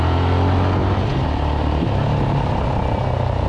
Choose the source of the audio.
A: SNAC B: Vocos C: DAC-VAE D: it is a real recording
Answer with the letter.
D